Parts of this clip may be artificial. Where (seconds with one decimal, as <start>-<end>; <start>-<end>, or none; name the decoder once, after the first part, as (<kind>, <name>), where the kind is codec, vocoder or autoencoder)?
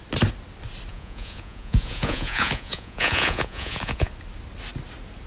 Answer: 0.9-4.1 (vocoder, Vocos)